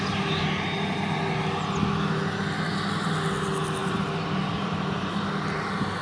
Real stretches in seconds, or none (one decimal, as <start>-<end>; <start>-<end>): 0.0-3.8; 5.2-6.0